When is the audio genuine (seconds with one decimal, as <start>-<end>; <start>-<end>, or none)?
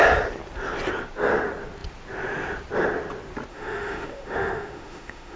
0.0-3.5